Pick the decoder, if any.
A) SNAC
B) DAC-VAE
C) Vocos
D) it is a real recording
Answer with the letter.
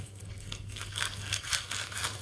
A